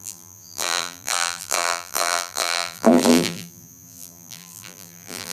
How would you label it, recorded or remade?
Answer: remade